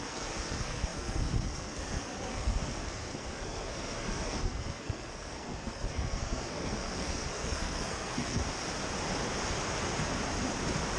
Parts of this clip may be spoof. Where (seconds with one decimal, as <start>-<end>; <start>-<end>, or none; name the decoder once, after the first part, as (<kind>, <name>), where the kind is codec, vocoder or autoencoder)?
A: 0.0-8.4 (codec, SNAC)